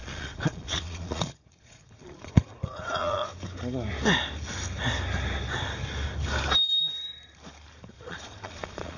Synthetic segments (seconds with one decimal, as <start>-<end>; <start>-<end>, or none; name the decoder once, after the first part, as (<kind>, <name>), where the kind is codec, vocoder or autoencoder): 0.0-3.2 (vocoder, Vocos); 7.9-9.0